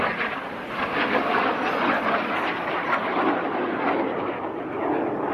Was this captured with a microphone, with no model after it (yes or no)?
yes